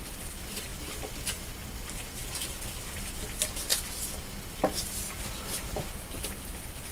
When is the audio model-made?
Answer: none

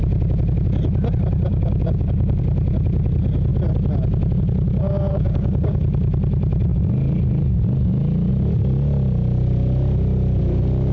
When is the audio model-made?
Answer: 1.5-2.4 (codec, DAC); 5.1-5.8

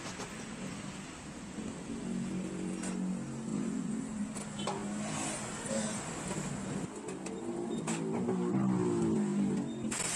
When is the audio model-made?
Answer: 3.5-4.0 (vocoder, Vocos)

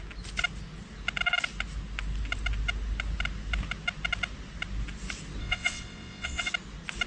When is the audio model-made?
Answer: 5.4-6.5 (vocoder, WaveNeXt)

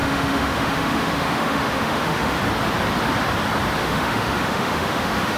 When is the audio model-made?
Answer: 0.0-2.4 (autoencoder, DAC-VAE); 3.8-5.4

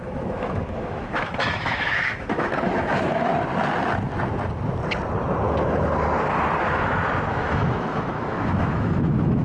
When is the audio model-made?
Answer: 0.0-3.3 (autoencoder, DAC-VAE); 7.3-9.4

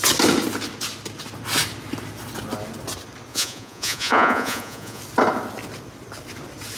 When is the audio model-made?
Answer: 3.3-5.0 (vocoder, Vocos)

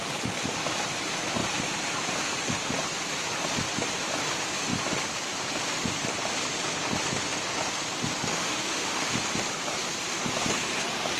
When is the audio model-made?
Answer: 8.3-9.1 (autoencoder, DAC-VAE)